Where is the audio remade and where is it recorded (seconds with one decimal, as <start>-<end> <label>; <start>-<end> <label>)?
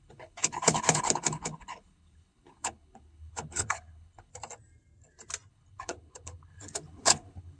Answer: 0.0-4.3 remade; 4.3-5.5 recorded; 5.5-7.6 remade